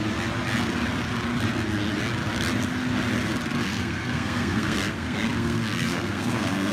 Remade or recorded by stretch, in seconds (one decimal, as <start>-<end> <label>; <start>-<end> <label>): 0.0-3.6 recorded; 3.6-6.7 remade